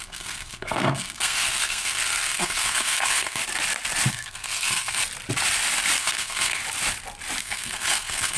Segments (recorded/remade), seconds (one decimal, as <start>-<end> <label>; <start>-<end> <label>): 0.0-3.4 remade; 3.4-4.1 recorded; 4.1-5.0 remade; 5.0-6.0 recorded; 6.0-6.6 remade; 6.6-7.4 recorded; 7.4-8.4 remade